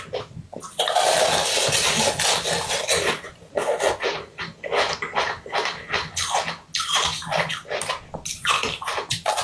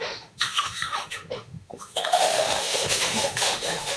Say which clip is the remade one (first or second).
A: second